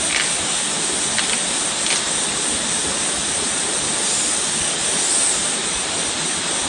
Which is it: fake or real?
real